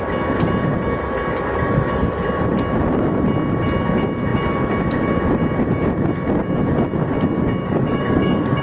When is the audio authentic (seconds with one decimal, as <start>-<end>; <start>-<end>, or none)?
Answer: 0.0-1.3; 1.9-7.6